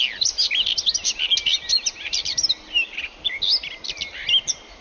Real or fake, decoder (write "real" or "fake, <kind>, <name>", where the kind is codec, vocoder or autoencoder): real